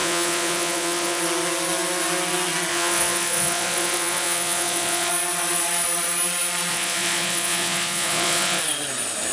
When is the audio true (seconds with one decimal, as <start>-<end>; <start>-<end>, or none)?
1.2-2.7; 5.1-6.7; 8.6-9.3